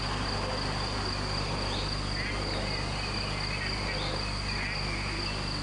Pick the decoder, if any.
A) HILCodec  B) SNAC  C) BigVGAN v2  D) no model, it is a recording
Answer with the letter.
D